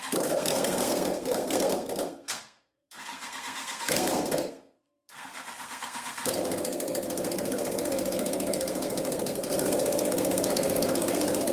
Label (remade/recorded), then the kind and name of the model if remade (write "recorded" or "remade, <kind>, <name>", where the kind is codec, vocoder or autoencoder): remade, codec, SNAC